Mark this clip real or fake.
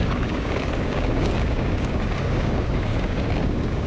fake